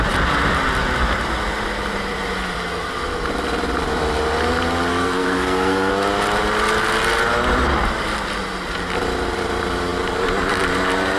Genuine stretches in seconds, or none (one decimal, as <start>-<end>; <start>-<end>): 0.0-4.9; 5.9-11.2